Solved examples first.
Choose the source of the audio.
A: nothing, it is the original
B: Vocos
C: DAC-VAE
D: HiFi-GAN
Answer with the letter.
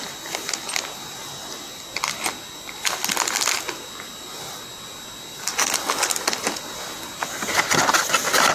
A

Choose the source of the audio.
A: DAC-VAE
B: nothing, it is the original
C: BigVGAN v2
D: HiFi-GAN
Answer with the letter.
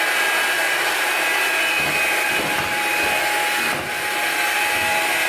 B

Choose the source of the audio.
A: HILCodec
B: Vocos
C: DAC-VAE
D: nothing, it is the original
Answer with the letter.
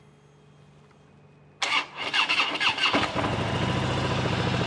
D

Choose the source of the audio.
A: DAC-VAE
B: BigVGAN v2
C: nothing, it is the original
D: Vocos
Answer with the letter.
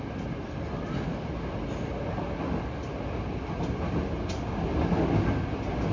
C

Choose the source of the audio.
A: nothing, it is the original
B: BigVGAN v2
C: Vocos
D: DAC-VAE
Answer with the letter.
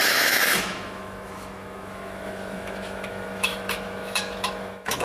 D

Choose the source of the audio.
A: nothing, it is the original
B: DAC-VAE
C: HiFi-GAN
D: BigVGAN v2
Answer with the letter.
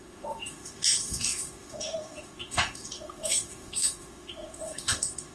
B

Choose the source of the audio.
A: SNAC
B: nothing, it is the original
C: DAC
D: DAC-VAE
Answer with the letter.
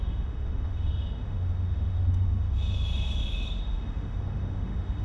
D